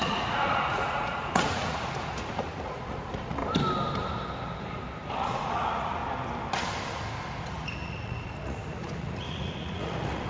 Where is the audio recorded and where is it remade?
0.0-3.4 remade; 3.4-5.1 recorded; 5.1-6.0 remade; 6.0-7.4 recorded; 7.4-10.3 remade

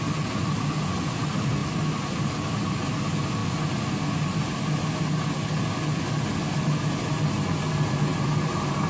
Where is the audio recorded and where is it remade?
0.0-8.9 recorded

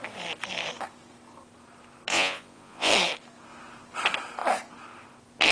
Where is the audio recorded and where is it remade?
0.0-2.1 recorded; 2.1-2.9 remade; 2.9-5.5 recorded